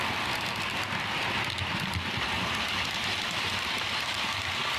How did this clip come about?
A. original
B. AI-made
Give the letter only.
A